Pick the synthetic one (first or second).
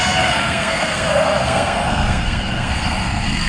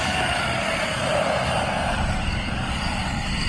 first